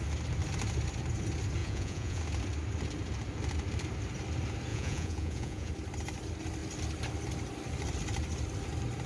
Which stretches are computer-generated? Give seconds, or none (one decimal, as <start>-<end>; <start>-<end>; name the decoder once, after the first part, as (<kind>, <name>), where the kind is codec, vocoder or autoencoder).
1.6-2.2 (vocoder, Vocos); 4.7-5.7